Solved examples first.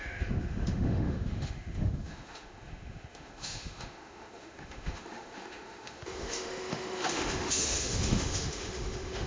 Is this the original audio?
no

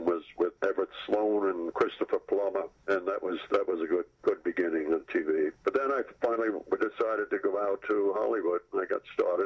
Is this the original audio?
yes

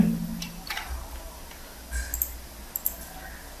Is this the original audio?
yes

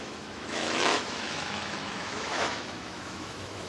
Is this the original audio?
no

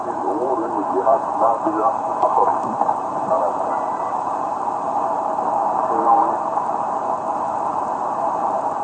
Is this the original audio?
no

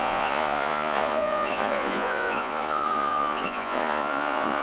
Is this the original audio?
no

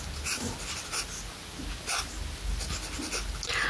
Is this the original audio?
yes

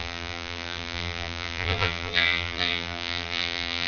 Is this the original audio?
no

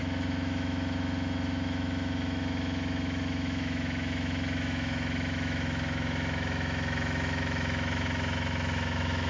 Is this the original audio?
no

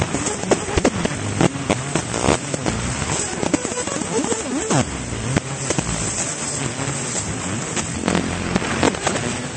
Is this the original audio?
yes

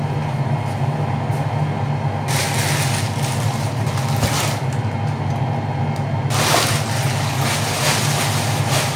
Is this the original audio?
yes